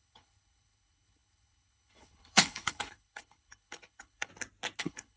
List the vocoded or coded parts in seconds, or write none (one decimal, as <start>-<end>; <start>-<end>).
0.0-4.3; 4.8-5.2